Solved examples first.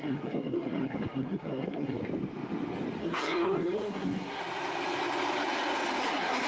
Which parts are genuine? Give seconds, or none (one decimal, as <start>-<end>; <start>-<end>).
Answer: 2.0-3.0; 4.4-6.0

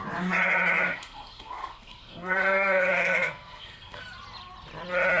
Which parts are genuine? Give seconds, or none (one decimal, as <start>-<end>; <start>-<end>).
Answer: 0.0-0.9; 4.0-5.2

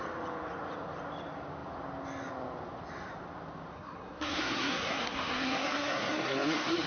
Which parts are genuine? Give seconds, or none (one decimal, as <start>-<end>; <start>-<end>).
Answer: 0.0-3.7

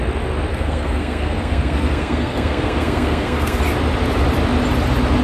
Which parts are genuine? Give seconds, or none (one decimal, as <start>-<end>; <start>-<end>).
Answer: 0.0-0.5; 3.6-5.2

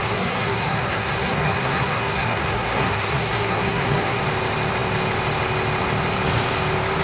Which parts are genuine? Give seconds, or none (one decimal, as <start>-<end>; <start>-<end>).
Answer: 4.2-7.0